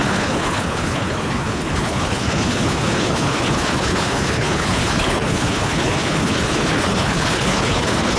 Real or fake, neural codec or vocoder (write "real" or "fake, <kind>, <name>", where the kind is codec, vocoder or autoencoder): fake, codec, HILCodec